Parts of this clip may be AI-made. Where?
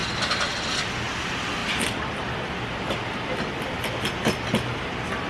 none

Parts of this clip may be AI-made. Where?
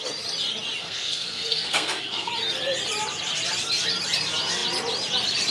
0.8-2.3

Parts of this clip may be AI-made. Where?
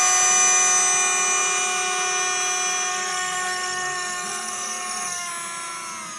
2.9-5.3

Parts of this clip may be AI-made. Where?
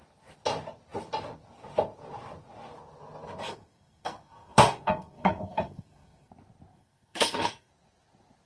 3.4-6.3; 6.7-7.7